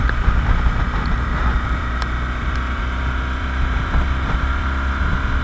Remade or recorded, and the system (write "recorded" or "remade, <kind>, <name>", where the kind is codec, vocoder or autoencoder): remade, vocoder, BigVGAN v2